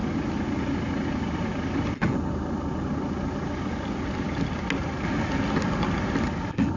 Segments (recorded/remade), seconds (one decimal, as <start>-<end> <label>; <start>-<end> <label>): 0.0-6.8 recorded